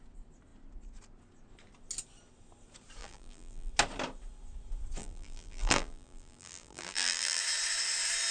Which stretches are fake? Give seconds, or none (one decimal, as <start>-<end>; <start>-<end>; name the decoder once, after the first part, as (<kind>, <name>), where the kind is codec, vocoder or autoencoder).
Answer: 3.0-3.7 (vocoder, BigVGAN v2); 5.0-7.4